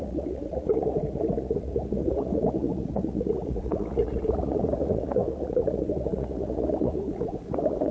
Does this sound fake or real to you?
fake